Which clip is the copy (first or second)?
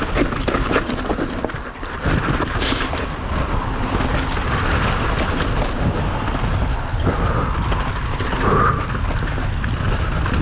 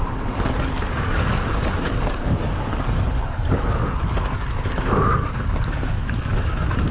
second